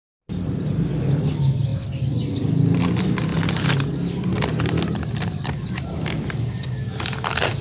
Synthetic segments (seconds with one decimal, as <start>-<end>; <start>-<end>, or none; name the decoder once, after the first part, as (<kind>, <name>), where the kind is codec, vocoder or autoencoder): none